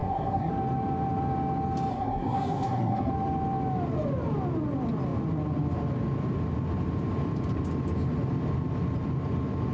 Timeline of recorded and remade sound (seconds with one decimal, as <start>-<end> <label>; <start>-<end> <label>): 0.0-0.5 remade; 0.5-1.9 recorded; 1.9-3.1 remade; 3.1-9.7 recorded